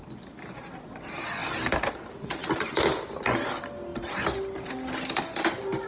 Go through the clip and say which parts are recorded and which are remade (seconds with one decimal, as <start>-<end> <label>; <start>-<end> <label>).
0.0-5.9 recorded